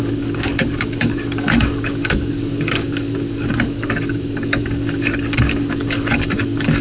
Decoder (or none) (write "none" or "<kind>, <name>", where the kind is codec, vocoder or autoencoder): codec, DAC